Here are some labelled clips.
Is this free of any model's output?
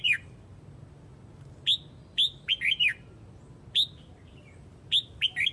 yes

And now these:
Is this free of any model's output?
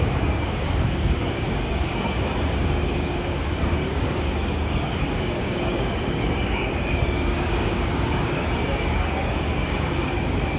no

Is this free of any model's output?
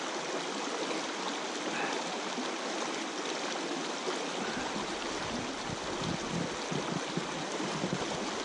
yes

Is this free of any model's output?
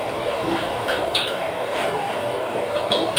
no